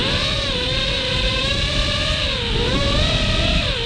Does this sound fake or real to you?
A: real